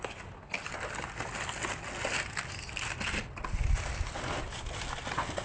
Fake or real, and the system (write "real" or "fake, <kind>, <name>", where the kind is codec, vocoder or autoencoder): real